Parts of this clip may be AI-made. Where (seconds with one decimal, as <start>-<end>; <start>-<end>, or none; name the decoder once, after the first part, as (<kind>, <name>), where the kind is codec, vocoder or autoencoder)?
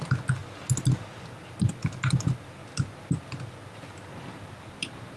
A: none